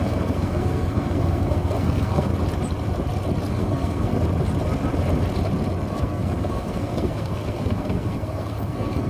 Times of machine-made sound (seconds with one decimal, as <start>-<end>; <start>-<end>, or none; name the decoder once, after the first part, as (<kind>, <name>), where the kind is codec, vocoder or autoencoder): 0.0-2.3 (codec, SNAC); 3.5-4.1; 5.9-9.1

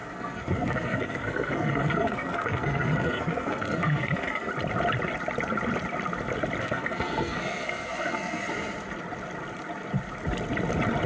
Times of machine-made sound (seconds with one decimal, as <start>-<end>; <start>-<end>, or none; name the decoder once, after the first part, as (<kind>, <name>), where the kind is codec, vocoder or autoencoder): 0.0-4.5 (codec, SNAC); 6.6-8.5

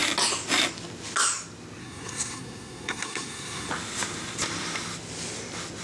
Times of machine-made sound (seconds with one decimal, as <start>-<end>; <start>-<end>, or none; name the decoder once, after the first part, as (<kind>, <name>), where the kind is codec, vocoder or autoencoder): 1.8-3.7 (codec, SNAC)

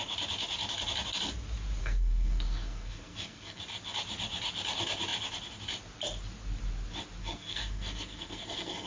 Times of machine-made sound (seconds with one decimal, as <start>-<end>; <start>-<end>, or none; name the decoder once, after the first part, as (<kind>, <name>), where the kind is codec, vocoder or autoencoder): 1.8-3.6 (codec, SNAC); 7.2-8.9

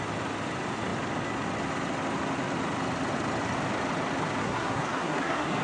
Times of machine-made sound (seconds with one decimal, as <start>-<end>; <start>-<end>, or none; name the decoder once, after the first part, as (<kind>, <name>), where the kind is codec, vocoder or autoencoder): 4.4-5.6 (codec, SNAC)

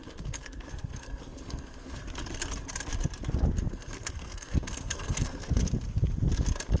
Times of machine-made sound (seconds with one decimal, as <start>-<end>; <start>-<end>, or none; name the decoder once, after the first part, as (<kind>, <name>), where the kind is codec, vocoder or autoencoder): 0.0-2.0 (codec, SNAC); 3.7-5.6